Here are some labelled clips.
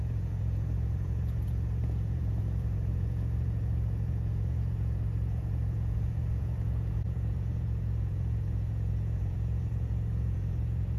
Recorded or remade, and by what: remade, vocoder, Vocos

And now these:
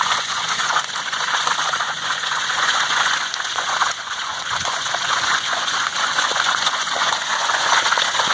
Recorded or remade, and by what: remade, vocoder, Vocos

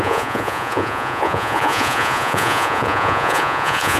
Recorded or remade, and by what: remade, vocoder, Vocos